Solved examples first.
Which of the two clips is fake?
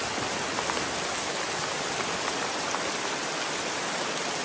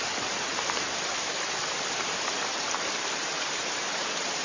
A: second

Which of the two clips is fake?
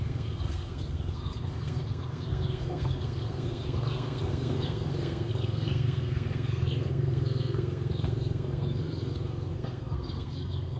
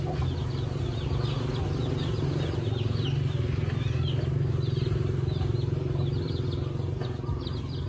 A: first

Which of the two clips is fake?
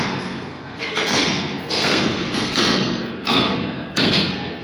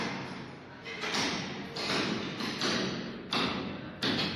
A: first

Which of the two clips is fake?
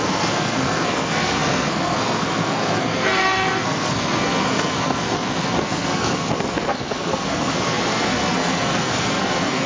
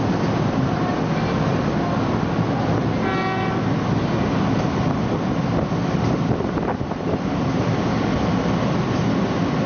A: first